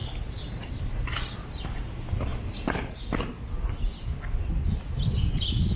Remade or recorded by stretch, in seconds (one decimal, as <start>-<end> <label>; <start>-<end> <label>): 0.0-0.7 remade; 0.7-5.8 recorded